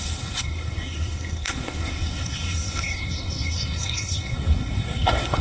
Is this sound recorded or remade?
remade